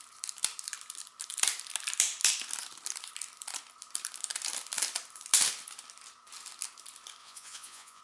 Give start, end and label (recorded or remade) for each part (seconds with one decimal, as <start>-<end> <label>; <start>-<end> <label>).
0.0-7.2 recorded; 7.2-8.0 remade